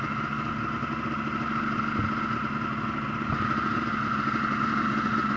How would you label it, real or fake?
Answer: real